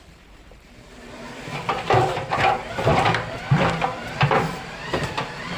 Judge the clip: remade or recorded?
remade